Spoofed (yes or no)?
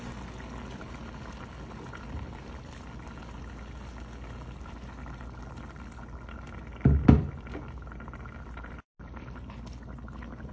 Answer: no